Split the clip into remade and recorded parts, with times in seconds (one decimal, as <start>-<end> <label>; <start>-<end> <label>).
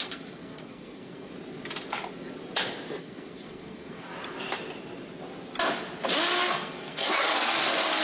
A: 0.0-1.3 remade; 1.3-3.0 recorded; 3.0-4.1 remade; 4.1-6.4 recorded; 6.4-8.0 remade